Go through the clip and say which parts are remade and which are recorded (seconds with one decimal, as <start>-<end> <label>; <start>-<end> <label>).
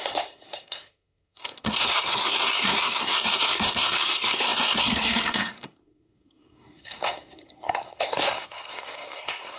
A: 0.0-9.6 remade